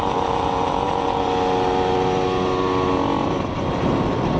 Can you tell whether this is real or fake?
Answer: real